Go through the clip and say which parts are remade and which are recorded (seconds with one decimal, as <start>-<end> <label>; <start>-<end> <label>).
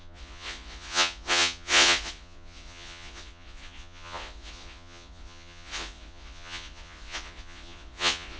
0.0-8.4 remade